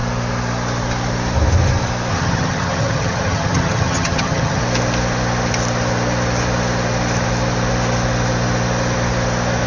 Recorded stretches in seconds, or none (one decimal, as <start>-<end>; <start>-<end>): 0.0-2.1; 4.6-9.7